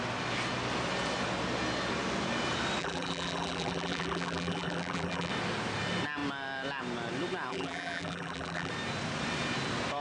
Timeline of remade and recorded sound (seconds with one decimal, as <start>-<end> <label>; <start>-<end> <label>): 0.0-2.8 recorded; 2.8-5.3 remade; 5.3-7.5 recorded; 7.5-8.7 remade; 8.7-10.0 recorded